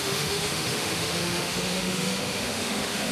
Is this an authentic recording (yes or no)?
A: no